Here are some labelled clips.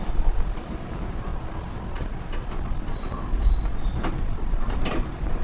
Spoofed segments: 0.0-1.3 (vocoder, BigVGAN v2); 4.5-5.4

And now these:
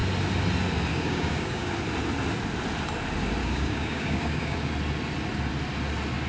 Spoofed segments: 0.9-1.7 (codec, DAC); 3.4-4.7

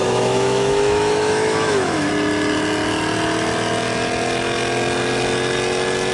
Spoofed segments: 0.0-2.1 (autoencoder, DAC-VAE)

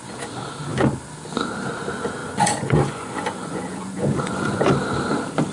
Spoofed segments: 2.2-4.6 (vocoder, Vocos)

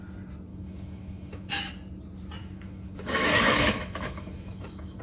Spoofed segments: 0.5-1.7 (autoencoder, DAC-VAE); 2.4-5.0